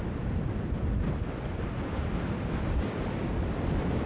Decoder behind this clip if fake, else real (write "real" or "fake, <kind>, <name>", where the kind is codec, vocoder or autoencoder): real